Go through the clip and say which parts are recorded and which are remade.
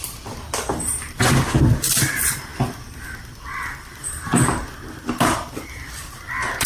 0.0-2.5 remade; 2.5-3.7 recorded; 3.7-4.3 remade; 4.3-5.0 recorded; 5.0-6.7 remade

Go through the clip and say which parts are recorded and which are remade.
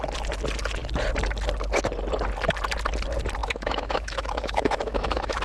0.0-3.4 recorded; 3.4-5.4 remade